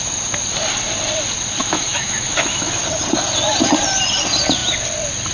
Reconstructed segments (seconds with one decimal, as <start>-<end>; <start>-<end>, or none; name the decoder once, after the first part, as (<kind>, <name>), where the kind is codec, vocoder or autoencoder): 1.6-2.8 (autoencoder, DAC-VAE)